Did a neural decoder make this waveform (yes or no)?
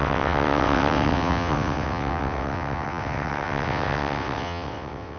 yes